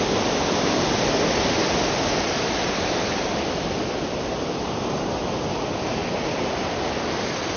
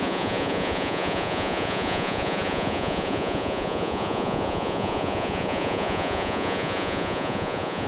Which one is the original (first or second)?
first